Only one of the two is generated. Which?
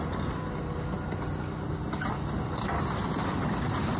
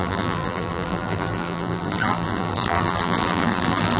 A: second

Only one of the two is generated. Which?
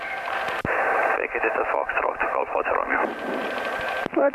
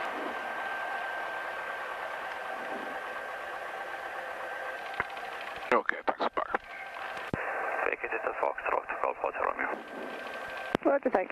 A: first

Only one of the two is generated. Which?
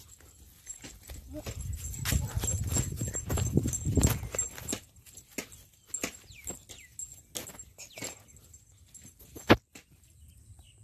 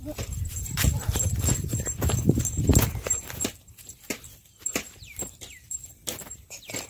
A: second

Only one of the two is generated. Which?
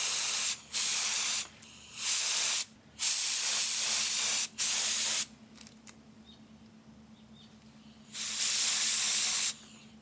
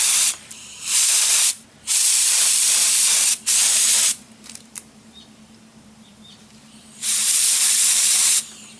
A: second